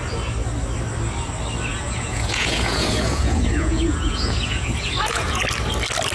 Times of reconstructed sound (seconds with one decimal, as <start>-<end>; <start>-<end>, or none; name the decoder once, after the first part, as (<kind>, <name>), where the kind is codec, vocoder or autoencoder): 1.7-5.4 (vocoder, Vocos)

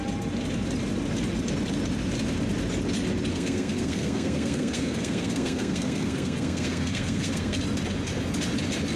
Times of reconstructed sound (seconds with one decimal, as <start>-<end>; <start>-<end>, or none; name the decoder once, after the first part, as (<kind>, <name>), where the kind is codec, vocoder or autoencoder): 3.3-7.6 (codec, SNAC)